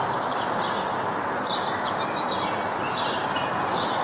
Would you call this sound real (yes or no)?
yes